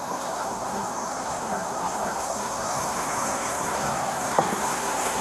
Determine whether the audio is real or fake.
fake